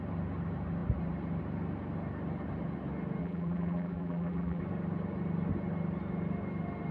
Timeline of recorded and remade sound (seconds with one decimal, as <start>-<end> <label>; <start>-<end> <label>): 0.0-3.2 recorded; 3.2-4.6 remade; 4.6-6.9 recorded